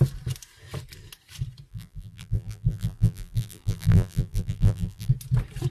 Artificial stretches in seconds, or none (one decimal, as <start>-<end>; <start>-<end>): 1.7-5.1